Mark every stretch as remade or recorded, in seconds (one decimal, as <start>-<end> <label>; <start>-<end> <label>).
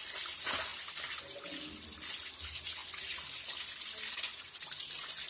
0.0-5.3 recorded